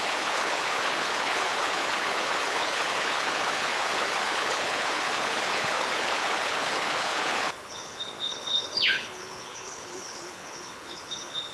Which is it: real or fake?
fake